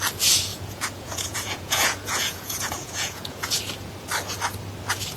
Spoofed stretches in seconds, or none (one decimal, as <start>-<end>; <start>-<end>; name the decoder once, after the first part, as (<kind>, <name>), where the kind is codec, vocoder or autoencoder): 0.5-3.6 (vocoder, Vocos)